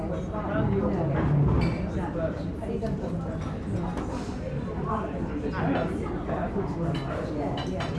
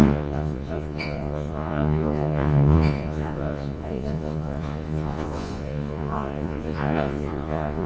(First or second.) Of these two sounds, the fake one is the second